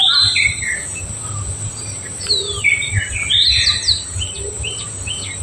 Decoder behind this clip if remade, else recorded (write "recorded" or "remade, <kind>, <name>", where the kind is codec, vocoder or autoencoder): remade, vocoder, BigVGAN v2